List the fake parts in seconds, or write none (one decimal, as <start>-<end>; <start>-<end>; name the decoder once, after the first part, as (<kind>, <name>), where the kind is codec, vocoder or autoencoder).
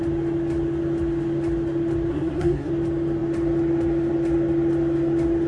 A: 2.1-2.7 (codec, SNAC)